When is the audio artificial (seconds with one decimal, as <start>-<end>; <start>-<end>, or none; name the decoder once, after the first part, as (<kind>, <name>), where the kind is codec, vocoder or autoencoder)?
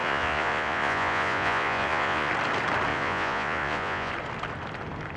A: 0.0-2.3 (vocoder, Vocos); 2.9-4.1